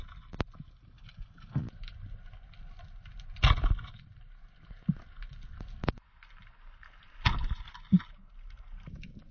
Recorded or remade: recorded